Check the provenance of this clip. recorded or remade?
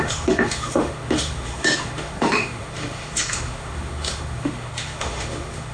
remade